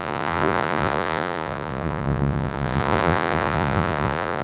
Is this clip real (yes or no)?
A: no